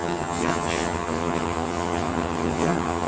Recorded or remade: remade